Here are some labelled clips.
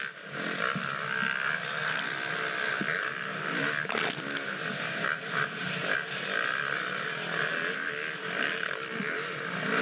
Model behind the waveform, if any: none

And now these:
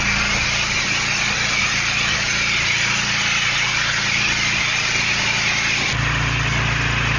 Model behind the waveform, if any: none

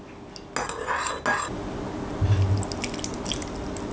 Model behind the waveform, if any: none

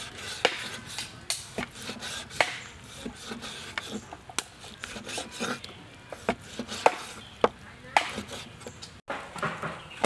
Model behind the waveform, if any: none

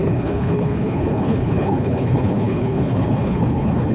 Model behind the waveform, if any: codec, HILCodec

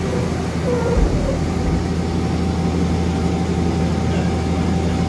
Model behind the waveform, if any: none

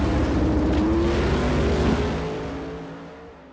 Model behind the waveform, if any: none